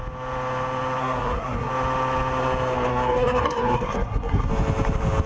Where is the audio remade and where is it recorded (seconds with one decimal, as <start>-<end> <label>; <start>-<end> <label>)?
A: 0.0-1.0 recorded; 1.0-1.7 remade; 1.7-2.9 recorded; 2.9-4.5 remade; 4.5-5.3 recorded

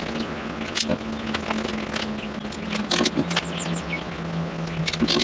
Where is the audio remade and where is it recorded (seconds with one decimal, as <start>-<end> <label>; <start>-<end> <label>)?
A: 0.0-5.2 recorded

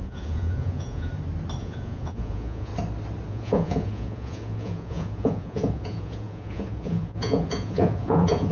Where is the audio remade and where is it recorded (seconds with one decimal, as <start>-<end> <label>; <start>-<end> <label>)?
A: 0.0-1.1 remade; 1.1-1.6 recorded; 1.6-2.7 remade; 2.7-3.3 recorded; 3.3-8.5 remade

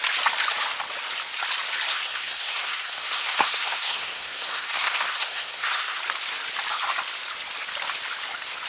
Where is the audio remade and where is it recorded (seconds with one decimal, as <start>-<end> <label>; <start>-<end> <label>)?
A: 0.0-1.9 recorded; 1.9-6.0 remade; 6.0-8.7 recorded

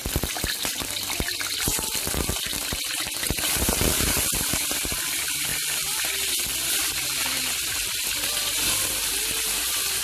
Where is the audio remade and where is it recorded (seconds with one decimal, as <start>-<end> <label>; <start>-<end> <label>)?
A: 0.0-5.5 remade; 5.5-6.7 recorded; 6.7-10.0 remade

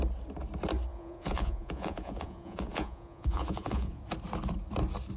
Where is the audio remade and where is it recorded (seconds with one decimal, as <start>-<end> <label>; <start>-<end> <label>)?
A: 0.0-0.9 recorded; 0.9-4.0 remade; 4.0-5.2 recorded

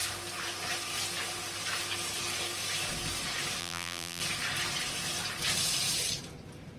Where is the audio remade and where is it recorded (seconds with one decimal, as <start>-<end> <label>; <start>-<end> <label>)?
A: 0.0-3.6 recorded; 3.6-4.2 remade; 4.2-6.8 recorded